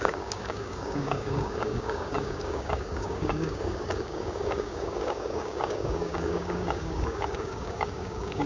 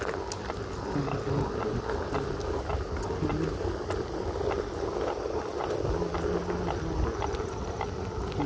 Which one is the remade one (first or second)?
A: first